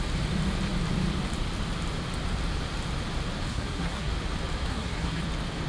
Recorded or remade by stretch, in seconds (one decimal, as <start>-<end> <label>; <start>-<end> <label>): 0.0-3.5 recorded; 3.5-4.1 remade; 4.1-4.7 recorded; 4.7-5.2 remade; 5.2-5.7 recorded